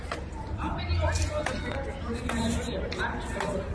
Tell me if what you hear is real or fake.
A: real